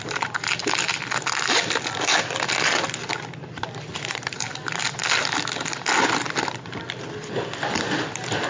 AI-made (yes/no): no